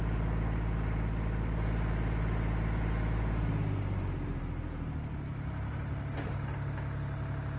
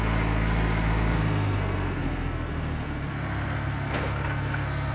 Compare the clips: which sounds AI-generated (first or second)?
second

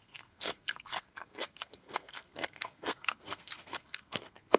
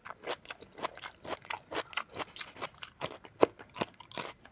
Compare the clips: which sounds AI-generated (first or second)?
first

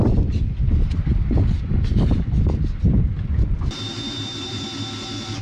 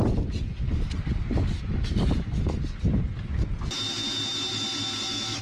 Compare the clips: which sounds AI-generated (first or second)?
first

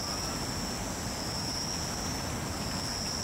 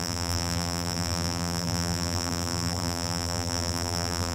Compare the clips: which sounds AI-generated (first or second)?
second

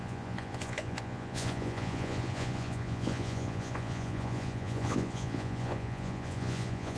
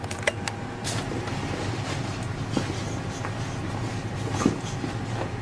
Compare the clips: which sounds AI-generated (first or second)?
first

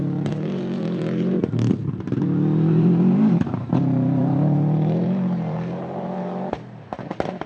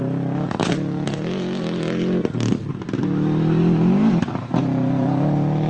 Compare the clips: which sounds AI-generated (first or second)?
first